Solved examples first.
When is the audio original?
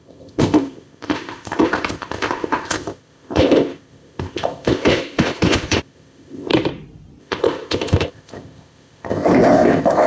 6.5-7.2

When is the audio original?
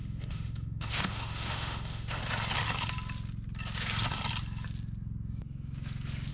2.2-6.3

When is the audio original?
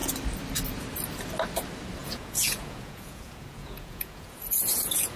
0.0-2.0